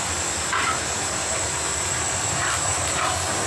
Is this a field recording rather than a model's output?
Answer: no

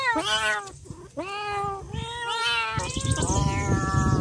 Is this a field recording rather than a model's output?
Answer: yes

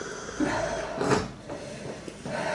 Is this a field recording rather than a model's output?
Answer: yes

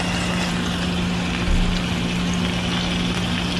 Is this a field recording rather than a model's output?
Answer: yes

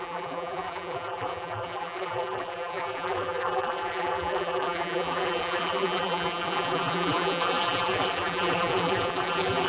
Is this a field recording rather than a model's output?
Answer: no